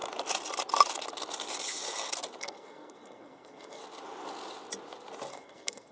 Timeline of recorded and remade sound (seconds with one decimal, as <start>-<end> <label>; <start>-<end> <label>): 0.0-2.4 recorded; 2.4-3.8 remade; 3.8-5.3 recorded; 5.3-5.9 remade